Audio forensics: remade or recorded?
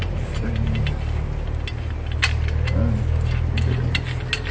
recorded